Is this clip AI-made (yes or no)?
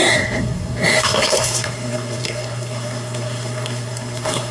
yes